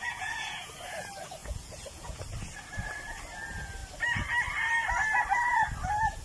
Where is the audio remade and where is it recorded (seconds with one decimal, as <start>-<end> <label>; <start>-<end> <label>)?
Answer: 0.0-0.7 remade; 0.7-1.4 recorded; 1.4-2.2 remade; 2.2-6.2 recorded